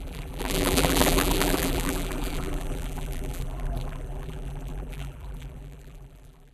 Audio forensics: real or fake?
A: fake